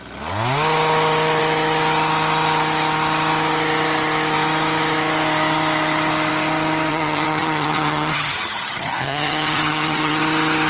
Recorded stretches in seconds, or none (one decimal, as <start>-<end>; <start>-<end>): 0.0-6.9; 10.2-10.7